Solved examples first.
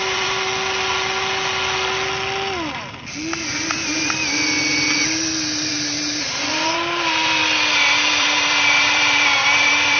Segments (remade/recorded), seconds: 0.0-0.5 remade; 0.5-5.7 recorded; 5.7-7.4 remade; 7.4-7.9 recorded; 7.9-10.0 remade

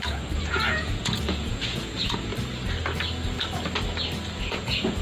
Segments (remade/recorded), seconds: 0.0-2.3 remade; 2.3-4.4 recorded; 4.4-5.0 remade

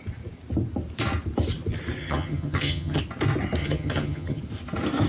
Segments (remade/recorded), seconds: 0.0-2.0 recorded; 2.0-3.0 remade; 3.0-3.6 recorded; 3.6-4.4 remade; 4.4-5.1 recorded

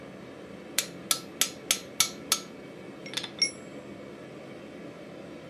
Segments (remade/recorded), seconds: 0.0-5.5 recorded